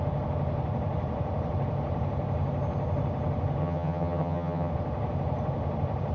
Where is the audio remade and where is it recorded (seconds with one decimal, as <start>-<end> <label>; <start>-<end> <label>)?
0.0-3.6 recorded; 3.6-4.7 remade; 4.7-6.1 recorded